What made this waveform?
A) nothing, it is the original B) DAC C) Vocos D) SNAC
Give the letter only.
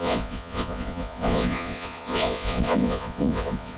C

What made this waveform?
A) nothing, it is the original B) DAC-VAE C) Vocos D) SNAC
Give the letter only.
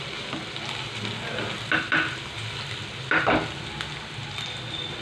A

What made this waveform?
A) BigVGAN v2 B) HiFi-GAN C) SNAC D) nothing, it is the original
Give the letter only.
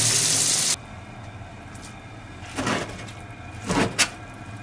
D